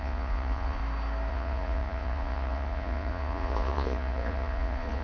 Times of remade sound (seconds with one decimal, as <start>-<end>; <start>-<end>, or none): 0.0-0.8; 1.3-5.0